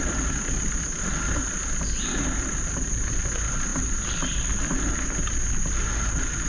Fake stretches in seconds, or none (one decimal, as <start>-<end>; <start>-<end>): none